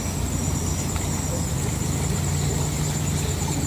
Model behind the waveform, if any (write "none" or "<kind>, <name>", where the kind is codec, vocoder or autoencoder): none